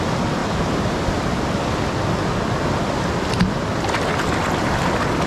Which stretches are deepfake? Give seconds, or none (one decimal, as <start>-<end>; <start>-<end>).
0.4-2.2